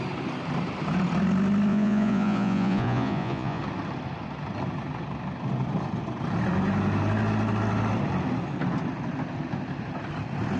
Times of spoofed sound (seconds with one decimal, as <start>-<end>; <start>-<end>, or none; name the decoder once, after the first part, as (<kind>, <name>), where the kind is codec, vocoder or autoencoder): 1.7-3.6 (vocoder, Vocos)